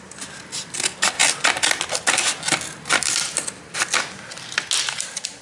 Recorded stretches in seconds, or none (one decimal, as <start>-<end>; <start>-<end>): 0.0-5.4